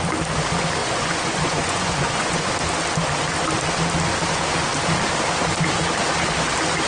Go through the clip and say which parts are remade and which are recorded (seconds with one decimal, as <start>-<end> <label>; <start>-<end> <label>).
0.0-0.8 recorded; 0.8-2.5 remade; 2.5-6.9 recorded